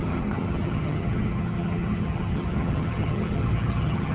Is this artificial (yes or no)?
yes